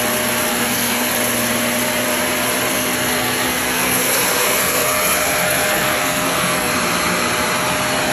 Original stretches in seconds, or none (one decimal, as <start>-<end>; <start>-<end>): 0.0-0.5; 1.1-2.7; 6.7-8.1